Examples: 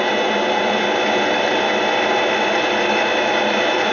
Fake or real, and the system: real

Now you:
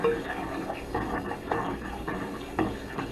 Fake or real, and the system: fake, codec, DAC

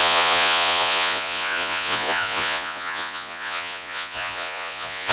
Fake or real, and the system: fake, vocoder, Vocos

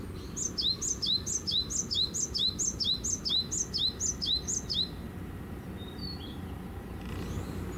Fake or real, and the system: real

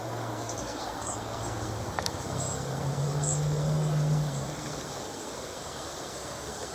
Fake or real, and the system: fake, codec, SNAC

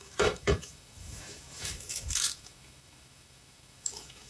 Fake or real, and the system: fake, autoencoder, DAC-VAE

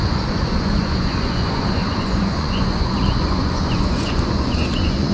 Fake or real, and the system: fake, vocoder, Vocos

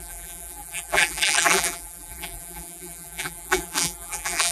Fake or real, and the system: fake, vocoder, BigVGAN v2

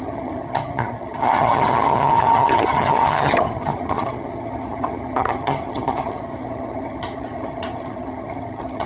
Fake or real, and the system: fake, vocoder, HiFi-GAN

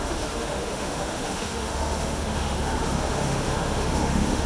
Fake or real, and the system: fake, autoencoder, DAC-VAE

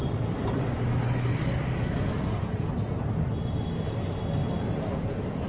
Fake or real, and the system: real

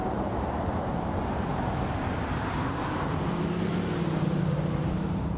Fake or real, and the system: fake, vocoder, BigVGAN v2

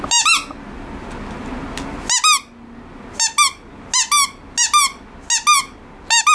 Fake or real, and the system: real